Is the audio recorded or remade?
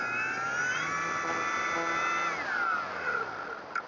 recorded